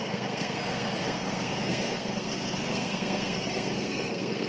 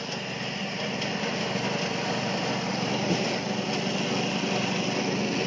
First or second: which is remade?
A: first